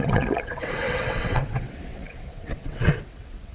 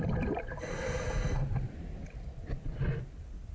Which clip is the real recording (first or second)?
second